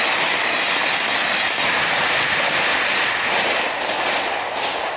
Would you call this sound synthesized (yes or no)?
no